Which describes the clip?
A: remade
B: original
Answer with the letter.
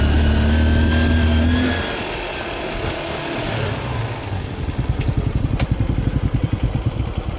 B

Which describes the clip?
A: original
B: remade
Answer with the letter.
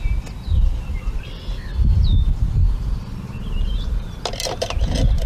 A